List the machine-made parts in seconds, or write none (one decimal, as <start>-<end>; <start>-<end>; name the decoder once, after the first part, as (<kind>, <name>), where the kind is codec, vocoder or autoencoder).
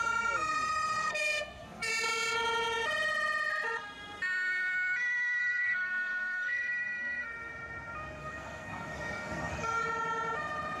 1.0-1.9 (codec, SNAC); 5.4-7.5; 8.2-9.8